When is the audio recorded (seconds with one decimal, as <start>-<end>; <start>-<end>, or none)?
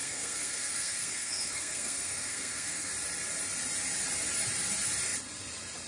2.9-5.9